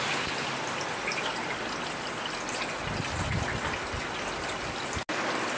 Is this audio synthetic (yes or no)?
no